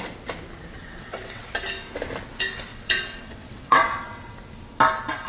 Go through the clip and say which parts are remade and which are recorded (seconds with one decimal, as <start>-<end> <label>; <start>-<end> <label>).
0.0-0.8 recorded; 0.8-1.4 remade; 1.4-2.7 recorded; 2.7-4.3 remade; 4.3-5.3 recorded